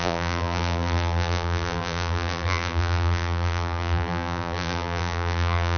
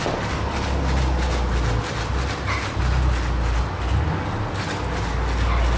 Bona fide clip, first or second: second